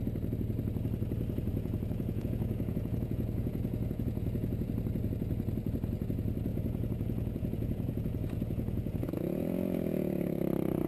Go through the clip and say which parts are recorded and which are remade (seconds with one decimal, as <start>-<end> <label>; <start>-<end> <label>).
0.0-1.5 recorded; 1.5-4.7 remade; 4.7-6.5 recorded; 6.5-10.4 remade; 10.4-10.9 recorded